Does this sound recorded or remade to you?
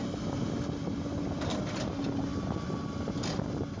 recorded